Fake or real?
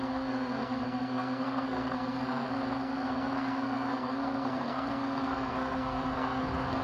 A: fake